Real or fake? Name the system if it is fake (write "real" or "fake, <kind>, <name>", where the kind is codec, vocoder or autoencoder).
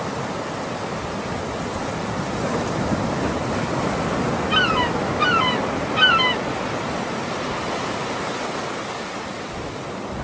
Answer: real